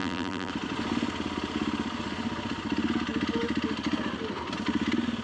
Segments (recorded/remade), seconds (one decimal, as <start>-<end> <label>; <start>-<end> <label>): 0.0-0.5 remade; 0.5-5.2 recorded